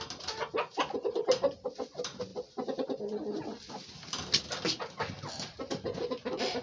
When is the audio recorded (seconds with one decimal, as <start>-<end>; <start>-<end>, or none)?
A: 0.0-6.6